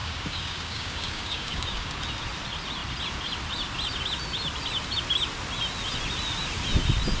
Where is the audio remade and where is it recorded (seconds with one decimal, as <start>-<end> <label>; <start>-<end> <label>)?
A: 0.0-2.0 remade; 2.0-7.2 recorded